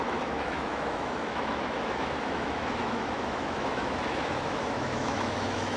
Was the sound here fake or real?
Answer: fake